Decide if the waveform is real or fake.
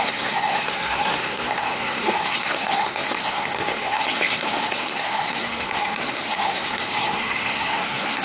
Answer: fake